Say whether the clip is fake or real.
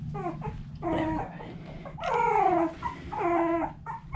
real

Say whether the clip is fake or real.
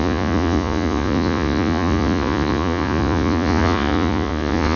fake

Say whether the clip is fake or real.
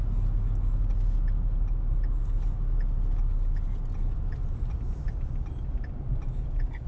real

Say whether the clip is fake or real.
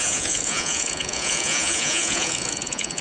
fake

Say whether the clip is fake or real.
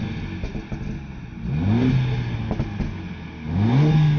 real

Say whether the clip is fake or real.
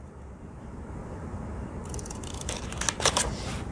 real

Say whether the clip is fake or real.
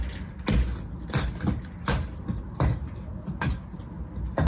real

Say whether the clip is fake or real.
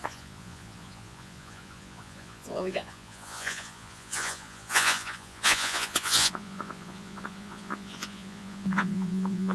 fake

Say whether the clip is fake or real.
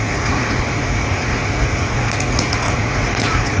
fake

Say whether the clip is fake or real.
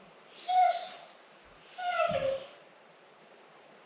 real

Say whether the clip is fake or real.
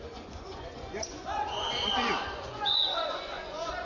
fake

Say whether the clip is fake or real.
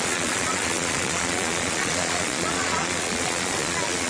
fake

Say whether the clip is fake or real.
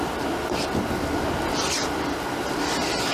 real